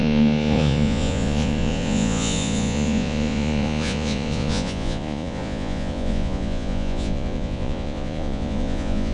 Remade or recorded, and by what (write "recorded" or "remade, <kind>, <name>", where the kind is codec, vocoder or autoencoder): remade, vocoder, Vocos